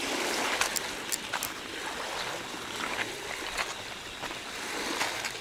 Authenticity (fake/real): real